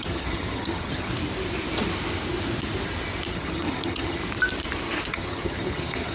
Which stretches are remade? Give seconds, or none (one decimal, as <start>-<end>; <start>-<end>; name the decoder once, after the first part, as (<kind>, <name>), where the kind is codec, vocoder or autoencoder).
0.0-1.1 (vocoder, HiFi-GAN); 3.3-4.2; 5.1-6.1